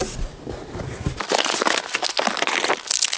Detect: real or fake real